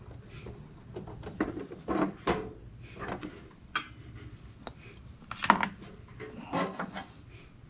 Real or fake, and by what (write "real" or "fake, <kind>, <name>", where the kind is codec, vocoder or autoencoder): real